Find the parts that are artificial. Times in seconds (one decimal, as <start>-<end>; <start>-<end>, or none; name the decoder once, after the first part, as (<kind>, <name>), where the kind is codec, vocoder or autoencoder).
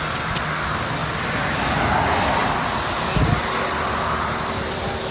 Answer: none